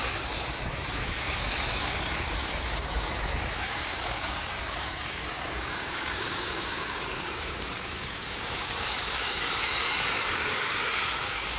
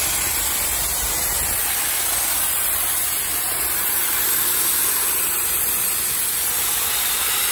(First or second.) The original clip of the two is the second